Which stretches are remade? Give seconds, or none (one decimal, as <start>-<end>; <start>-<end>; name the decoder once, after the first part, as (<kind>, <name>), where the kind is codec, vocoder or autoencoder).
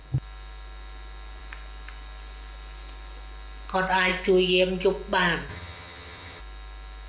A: 5.5-6.4 (vocoder, HiFi-GAN)